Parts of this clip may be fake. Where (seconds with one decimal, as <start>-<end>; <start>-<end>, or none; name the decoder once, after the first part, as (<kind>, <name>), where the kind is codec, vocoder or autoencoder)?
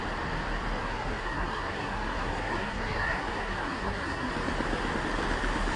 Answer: 0.8-4.3 (codec, SNAC)